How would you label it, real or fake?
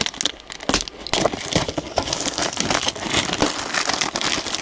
real